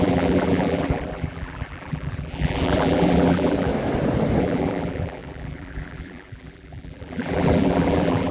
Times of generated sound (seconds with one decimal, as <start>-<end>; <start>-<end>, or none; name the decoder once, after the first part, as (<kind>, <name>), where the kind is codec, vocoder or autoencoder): 0.0-3.7 (vocoder, BigVGAN v2); 4.4-8.3

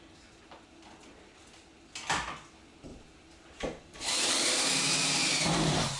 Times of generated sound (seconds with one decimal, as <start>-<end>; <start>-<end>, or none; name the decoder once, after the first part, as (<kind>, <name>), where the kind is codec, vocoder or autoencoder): 2.9-6.0 (vocoder, BigVGAN v2)

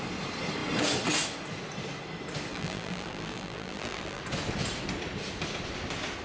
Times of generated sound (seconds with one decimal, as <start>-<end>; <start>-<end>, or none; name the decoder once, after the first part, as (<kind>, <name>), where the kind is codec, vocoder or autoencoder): 2.5-4.2 (vocoder, BigVGAN v2)

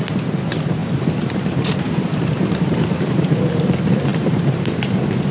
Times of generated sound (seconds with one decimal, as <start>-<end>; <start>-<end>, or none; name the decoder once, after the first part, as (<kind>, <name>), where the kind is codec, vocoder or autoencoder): 0.8-3.3 (vocoder, BigVGAN v2); 4.1-5.3

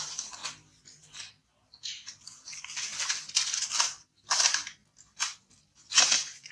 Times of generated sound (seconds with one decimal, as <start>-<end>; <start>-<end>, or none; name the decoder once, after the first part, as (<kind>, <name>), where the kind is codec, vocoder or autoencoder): 0.0-0.4 (vocoder, BigVGAN v2); 1.3-2.9; 3.6-4.8; 5.4-6.5

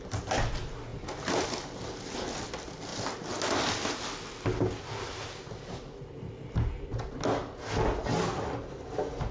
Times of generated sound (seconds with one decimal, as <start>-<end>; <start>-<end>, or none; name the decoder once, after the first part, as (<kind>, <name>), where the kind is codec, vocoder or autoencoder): 0.9-2.1 (vocoder, BigVGAN v2)

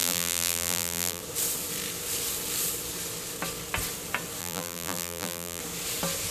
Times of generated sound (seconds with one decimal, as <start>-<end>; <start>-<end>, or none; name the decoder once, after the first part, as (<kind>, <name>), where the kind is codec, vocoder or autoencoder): 0.0-1.2 (vocoder, BigVGAN v2); 4.4-5.6

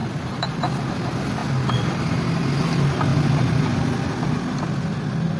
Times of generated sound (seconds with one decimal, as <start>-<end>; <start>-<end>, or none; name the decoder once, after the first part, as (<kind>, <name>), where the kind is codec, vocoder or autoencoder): 0.0-0.8 (vocoder, BigVGAN v2)